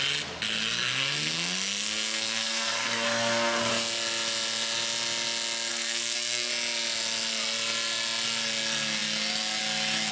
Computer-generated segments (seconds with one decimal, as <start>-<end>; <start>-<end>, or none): 0.6-3.7; 5.7-6.5